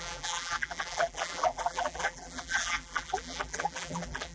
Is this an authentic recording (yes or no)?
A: no